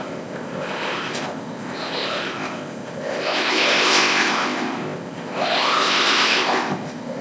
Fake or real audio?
fake